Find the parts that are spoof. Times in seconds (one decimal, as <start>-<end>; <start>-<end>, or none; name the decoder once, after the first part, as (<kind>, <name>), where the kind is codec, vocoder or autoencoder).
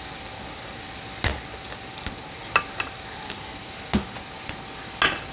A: none